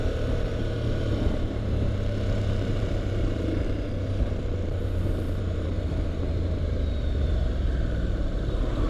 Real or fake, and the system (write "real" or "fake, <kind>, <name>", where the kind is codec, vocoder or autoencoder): fake, vocoder, BigVGAN v2